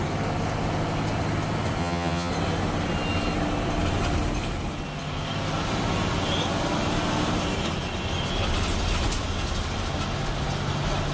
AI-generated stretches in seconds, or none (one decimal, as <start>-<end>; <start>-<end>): 1.8-2.3